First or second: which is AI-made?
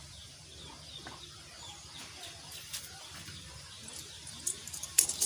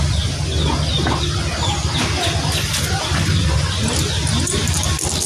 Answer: first